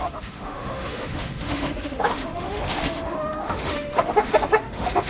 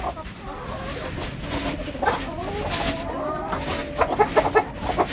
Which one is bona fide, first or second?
second